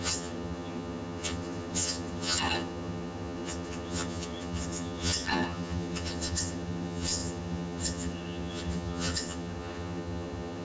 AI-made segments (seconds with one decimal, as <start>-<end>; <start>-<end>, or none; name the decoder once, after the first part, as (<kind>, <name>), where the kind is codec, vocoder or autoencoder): 0.0-10.6 (vocoder, HiFi-GAN)